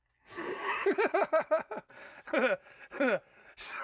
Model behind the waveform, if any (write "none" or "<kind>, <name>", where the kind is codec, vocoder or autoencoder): none